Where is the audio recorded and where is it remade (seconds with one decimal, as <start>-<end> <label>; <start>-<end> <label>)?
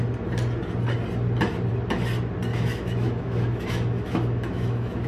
0.0-2.5 recorded; 2.5-5.1 remade